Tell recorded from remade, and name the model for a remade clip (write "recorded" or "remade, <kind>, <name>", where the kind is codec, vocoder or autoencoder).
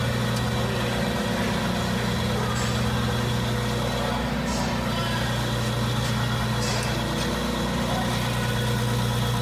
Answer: recorded